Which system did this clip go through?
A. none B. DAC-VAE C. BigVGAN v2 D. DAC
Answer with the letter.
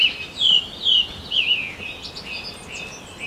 A